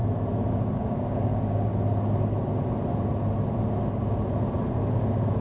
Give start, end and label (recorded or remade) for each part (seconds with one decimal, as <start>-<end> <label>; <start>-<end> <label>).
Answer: 0.0-0.5 recorded; 0.5-1.7 remade; 1.7-4.9 recorded; 4.9-5.4 remade